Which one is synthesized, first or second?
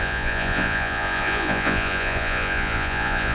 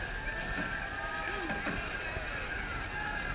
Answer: first